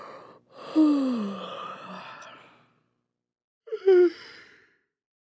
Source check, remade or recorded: recorded